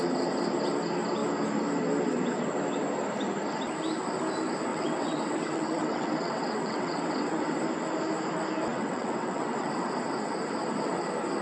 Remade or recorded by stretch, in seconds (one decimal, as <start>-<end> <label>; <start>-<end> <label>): 0.0-4.7 recorded; 4.7-7.6 remade; 7.6-8.7 recorded; 8.7-9.7 remade; 9.7-11.4 recorded